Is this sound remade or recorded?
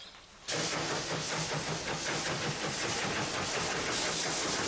recorded